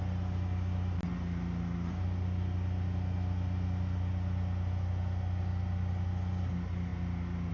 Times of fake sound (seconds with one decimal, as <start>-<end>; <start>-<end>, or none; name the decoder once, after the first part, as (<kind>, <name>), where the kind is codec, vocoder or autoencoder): none